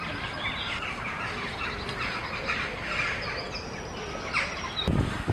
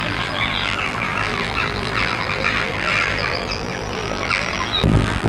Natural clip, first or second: first